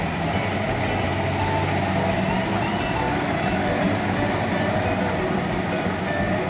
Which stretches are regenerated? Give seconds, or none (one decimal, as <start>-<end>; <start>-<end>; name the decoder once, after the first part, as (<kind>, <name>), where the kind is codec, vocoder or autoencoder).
none

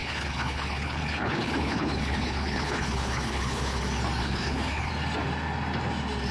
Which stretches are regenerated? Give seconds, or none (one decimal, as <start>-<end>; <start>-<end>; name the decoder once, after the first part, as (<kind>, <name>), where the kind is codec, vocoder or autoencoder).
0.0-3.8 (codec, HILCodec); 4.2-4.9